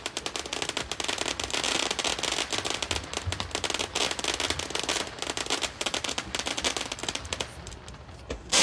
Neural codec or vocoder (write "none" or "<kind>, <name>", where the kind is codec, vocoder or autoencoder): none